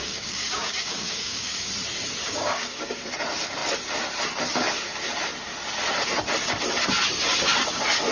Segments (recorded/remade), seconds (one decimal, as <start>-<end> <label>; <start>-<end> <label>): 0.0-1.7 remade; 1.7-2.2 recorded; 2.2-3.0 remade; 3.0-8.1 recorded